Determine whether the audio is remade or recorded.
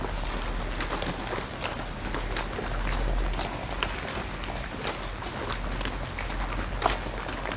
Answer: recorded